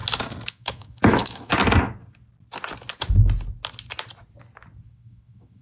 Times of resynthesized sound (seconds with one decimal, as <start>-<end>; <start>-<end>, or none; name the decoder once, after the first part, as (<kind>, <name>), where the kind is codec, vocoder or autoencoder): 0.5-1.5 (autoencoder, DAC-VAE); 4.9-5.6